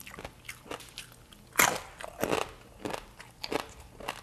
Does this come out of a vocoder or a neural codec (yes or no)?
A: no